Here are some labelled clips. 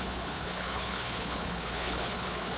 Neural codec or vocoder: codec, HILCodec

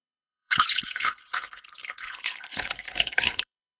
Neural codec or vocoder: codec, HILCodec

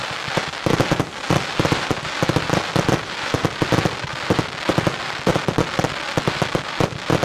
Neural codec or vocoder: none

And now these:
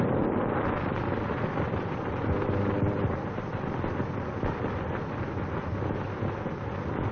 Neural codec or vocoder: none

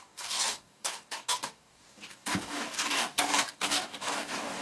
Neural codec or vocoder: codec, DAC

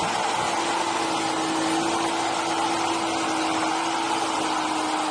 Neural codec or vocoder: none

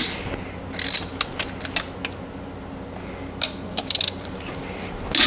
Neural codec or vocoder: none